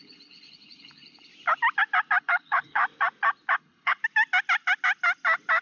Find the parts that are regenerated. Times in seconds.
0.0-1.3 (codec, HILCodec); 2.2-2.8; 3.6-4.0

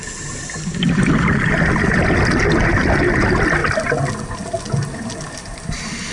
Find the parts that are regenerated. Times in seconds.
none

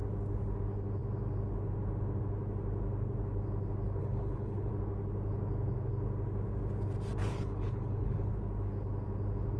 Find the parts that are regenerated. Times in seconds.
4.0-4.7 (codec, HILCodec); 7.2-8.3

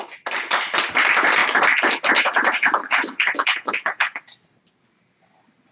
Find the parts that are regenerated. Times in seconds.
2.8-4.2 (codec, HILCodec)

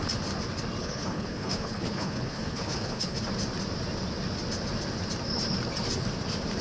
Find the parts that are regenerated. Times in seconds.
0.8-3.2 (codec, HILCodec)

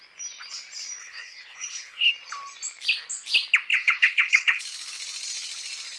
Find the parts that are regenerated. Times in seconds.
1.0-2.1 (codec, HILCodec); 3.7-4.6